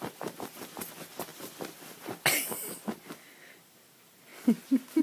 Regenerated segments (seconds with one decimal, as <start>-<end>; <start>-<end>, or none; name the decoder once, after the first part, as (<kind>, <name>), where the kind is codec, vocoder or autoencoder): 0.0-4.3 (vocoder, BigVGAN v2)